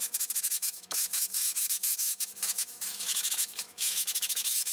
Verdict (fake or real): fake